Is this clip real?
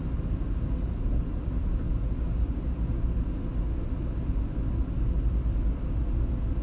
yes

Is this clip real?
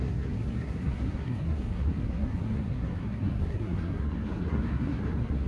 no